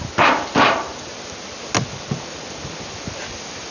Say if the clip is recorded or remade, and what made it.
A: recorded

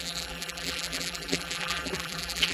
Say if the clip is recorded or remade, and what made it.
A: remade, vocoder, BigVGAN v2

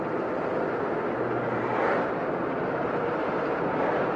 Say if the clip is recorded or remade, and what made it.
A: recorded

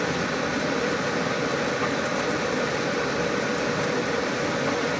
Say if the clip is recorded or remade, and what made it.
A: recorded